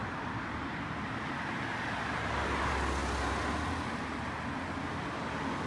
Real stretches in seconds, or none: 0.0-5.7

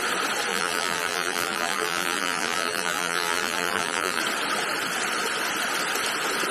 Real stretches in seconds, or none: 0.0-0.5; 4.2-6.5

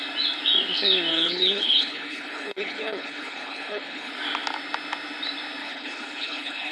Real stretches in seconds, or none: 0.0-1.1; 4.1-5.6